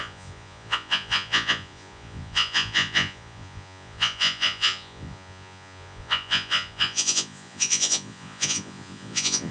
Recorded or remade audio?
remade